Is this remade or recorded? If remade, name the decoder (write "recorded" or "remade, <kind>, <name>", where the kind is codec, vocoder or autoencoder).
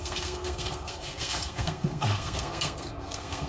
remade, codec, SNAC